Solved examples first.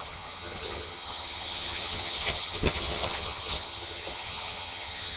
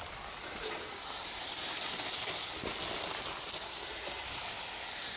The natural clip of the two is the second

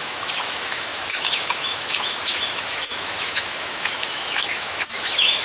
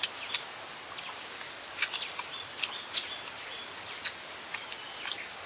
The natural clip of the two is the second